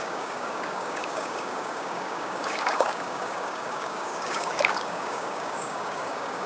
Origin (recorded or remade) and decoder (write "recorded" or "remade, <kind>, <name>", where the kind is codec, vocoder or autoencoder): remade, codec, DAC